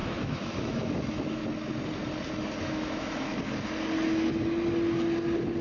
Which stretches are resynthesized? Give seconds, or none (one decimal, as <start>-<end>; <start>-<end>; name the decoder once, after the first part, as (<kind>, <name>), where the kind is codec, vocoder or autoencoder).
0.0-1.4 (autoencoder, DAC-VAE); 2.6-3.3